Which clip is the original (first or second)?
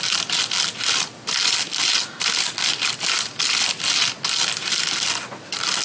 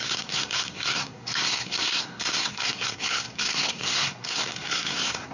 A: first